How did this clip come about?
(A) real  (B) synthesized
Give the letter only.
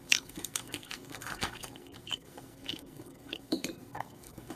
B